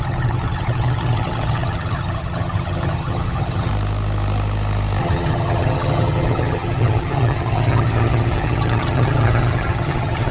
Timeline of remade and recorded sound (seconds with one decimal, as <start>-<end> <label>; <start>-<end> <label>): 0.0-3.7 remade; 3.7-5.0 recorded; 5.0-10.3 remade